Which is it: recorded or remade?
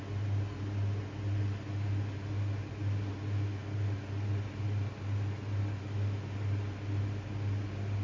recorded